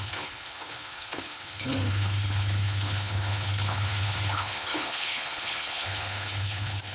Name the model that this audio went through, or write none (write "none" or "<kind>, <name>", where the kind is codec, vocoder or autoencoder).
codec, HILCodec